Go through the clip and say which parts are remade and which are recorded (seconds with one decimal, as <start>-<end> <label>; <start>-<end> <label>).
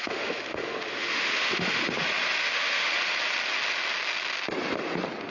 0.0-1.8 remade; 1.8-2.4 recorded; 2.4-2.9 remade; 2.9-5.3 recorded